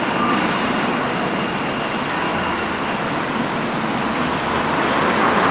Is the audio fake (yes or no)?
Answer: no